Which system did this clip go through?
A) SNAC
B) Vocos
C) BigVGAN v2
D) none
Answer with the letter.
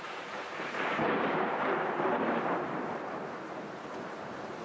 C